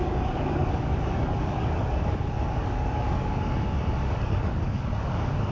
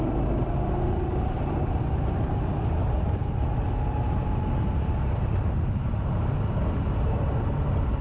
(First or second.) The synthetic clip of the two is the first